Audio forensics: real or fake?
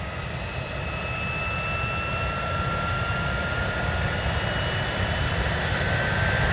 real